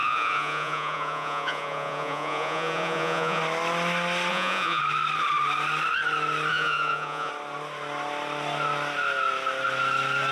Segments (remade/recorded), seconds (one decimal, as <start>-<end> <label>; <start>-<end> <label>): 0.0-3.4 remade; 3.4-4.3 recorded; 4.3-4.8 remade; 4.8-6.5 recorded; 6.5-7.3 remade; 7.3-10.3 recorded